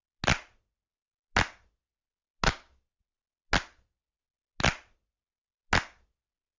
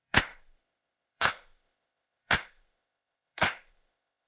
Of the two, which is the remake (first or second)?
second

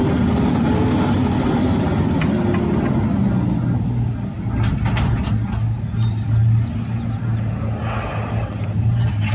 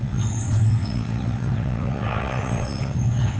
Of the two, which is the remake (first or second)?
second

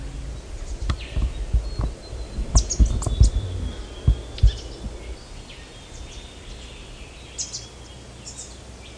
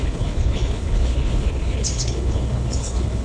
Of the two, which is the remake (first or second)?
second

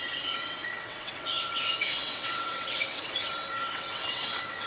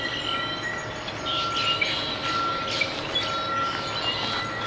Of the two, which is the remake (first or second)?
first